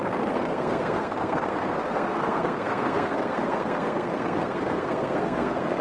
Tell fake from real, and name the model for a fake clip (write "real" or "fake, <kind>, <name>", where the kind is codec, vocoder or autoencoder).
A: fake, codec, SNAC